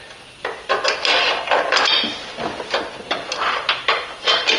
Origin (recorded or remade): recorded